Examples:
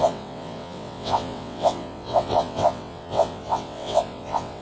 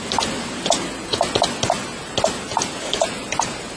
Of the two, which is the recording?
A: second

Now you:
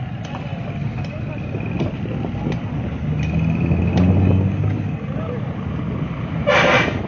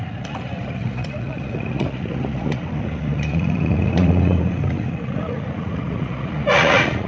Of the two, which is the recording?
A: first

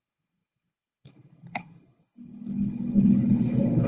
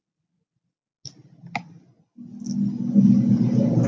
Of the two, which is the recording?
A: second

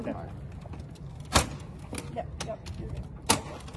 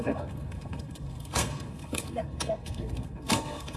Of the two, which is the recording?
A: first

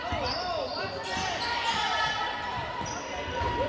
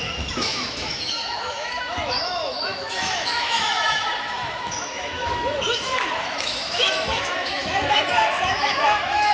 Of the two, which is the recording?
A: first